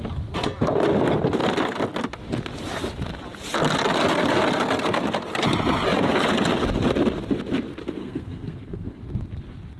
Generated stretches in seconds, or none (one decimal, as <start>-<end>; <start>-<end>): 8.0-9.0

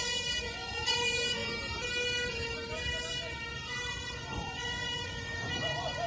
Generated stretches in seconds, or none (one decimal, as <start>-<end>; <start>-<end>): 0.0-1.4; 3.9-6.1